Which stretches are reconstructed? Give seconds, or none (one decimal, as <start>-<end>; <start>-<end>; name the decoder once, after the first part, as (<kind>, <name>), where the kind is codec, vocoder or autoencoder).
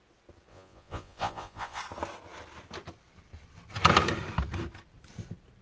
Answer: 0.5-1.8 (vocoder, Vocos)